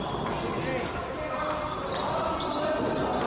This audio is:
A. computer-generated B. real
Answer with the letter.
B